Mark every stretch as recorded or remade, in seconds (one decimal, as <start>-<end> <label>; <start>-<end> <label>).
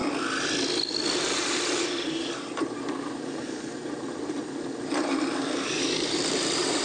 0.0-1.0 recorded; 1.0-6.8 remade